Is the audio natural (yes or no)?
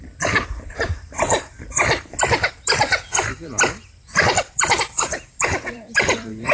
no